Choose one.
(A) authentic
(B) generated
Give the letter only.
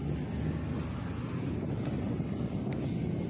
A